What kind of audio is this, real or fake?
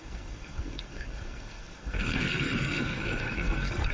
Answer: fake